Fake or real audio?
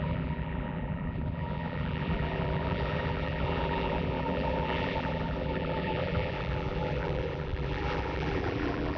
fake